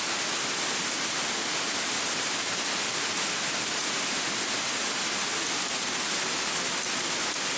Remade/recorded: recorded